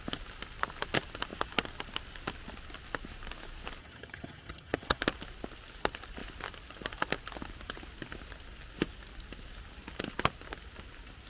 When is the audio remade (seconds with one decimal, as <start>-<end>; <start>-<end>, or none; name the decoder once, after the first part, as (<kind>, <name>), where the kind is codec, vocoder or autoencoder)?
3.8-5.0 (vocoder, HiFi-GAN)